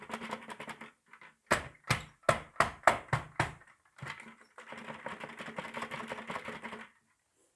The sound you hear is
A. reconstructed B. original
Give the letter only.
B